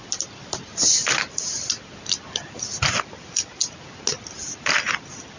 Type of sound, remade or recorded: recorded